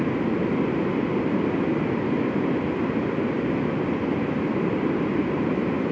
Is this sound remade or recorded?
recorded